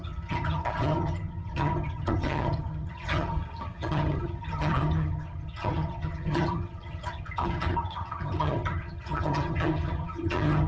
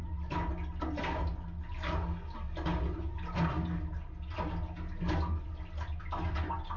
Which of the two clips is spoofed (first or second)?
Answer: first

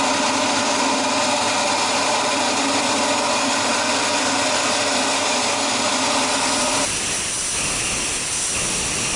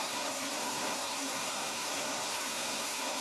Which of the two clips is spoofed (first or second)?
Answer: second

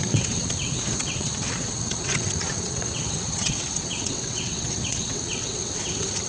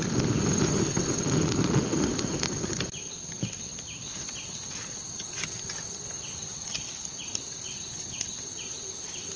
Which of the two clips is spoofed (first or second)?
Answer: first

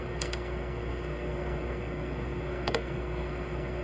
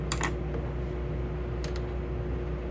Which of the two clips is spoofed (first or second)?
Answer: first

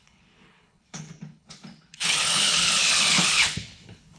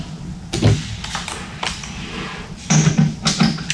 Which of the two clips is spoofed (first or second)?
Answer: first